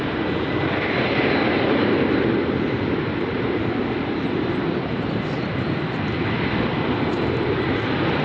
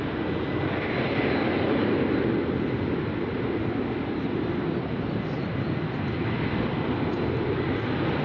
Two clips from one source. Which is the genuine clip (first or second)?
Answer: second